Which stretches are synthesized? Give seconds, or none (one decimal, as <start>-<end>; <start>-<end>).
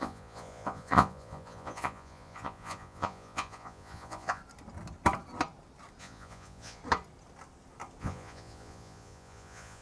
0.0-4.4; 6.0-6.8; 8.0-9.8